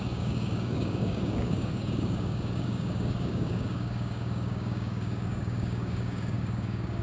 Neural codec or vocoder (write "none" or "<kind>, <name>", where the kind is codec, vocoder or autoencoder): codec, DAC